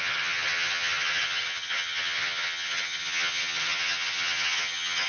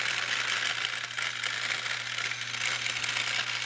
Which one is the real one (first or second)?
second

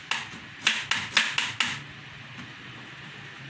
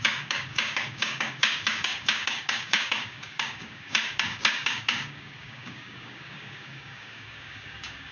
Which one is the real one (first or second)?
first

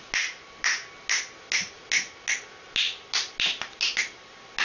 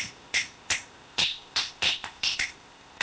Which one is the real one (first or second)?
first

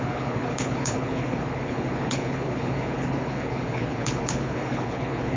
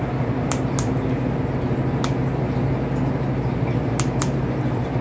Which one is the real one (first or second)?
second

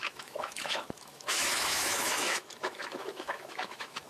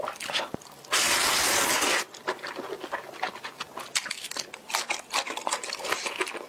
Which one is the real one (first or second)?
second